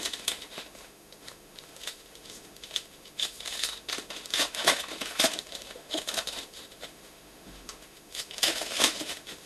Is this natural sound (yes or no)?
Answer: no